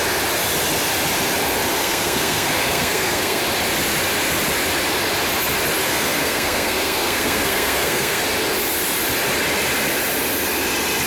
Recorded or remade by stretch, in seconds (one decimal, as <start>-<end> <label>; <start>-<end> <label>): 0.0-1.8 recorded; 1.8-3.4 remade; 3.4-5.8 recorded; 5.8-8.2 remade; 8.2-11.1 recorded

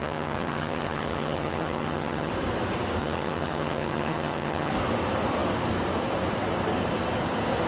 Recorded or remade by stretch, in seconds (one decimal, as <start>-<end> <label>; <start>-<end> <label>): 0.0-2.3 remade; 2.3-3.0 recorded; 3.0-4.7 remade; 4.7-7.7 recorded

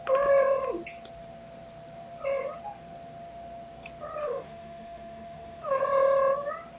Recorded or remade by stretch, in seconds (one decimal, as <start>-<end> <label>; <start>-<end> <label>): 0.0-4.2 recorded; 4.2-5.8 remade; 5.8-6.8 recorded

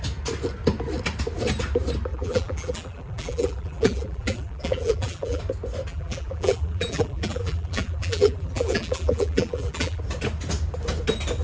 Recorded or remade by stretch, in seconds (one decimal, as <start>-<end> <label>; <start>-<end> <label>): 0.0-2.1 recorded; 2.1-5.4 remade; 5.4-5.9 recorded; 5.9-10.0 remade; 10.0-11.4 recorded

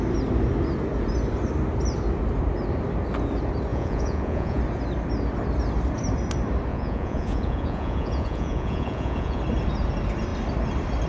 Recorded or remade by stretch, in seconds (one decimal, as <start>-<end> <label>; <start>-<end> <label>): 0.0-3.7 recorded; 3.7-4.6 remade; 4.6-6.7 recorded; 6.7-9.4 remade; 9.4-11.1 recorded

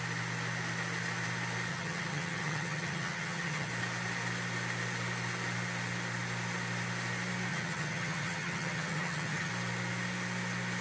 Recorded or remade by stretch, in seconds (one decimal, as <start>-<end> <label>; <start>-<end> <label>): 0.0-1.7 recorded; 1.7-3.7 remade; 3.7-7.5 recorded; 7.5-9.5 remade; 9.5-10.8 recorded